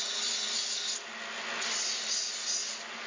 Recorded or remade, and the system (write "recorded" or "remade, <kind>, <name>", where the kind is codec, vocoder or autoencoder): recorded